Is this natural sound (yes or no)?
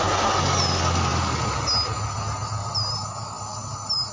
yes